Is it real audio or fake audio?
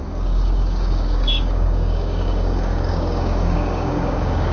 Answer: fake